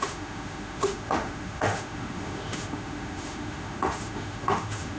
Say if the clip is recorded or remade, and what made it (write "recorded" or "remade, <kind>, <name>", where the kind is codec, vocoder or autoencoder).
remade, autoencoder, DAC-VAE